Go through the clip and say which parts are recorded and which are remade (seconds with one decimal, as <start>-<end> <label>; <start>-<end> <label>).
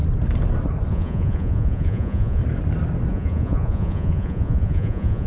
0.0-0.9 recorded; 0.9-2.4 remade; 2.4-3.1 recorded; 3.1-5.3 remade